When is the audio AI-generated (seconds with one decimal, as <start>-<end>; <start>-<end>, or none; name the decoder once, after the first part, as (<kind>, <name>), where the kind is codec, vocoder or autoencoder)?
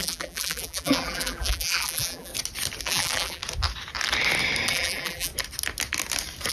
0.0-2.3 (vocoder, BigVGAN v2); 2.8-3.4; 4.7-5.3